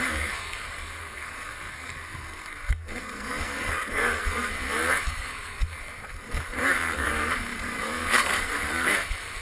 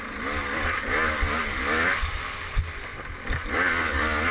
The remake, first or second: first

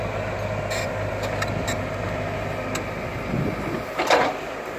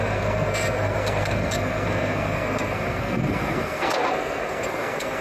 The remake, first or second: second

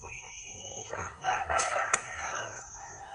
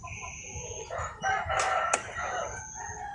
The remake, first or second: first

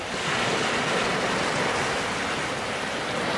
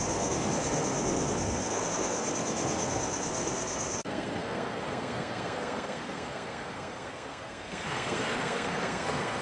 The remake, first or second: second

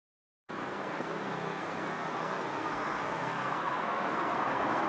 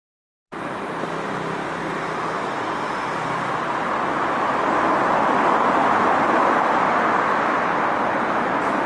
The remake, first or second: first